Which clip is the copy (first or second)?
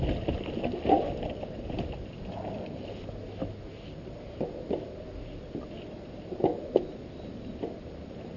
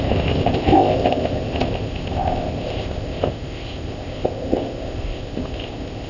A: second